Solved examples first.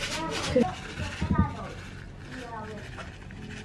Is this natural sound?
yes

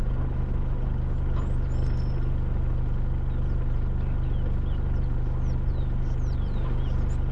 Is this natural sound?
yes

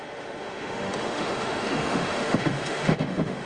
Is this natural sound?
no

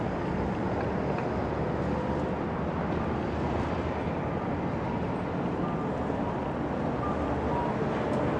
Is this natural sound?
yes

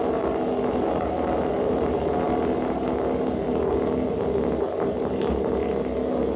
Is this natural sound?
yes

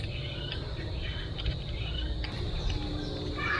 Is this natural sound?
yes